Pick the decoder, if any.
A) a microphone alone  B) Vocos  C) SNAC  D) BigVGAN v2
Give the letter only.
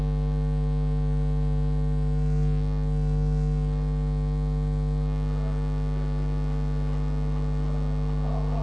A